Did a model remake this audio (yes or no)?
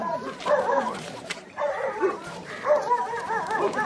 yes